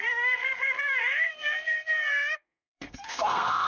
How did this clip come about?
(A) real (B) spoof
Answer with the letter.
B